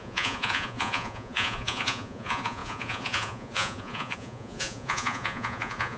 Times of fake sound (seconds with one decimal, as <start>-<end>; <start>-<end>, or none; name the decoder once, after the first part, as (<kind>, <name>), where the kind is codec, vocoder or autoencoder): 0.0-6.0 (vocoder, Vocos)

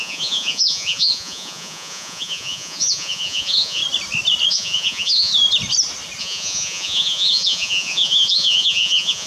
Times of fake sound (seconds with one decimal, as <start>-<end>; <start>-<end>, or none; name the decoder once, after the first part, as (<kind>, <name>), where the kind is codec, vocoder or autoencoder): 0.0-3.8 (vocoder, Vocos); 4.5-5.3; 6.2-9.3

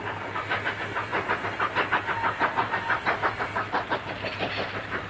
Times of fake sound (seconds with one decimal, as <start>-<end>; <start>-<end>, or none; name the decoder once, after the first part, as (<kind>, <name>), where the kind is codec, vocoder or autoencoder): none